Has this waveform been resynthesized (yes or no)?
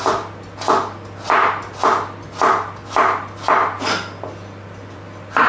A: no